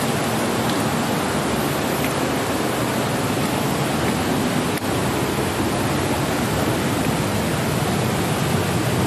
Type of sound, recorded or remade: recorded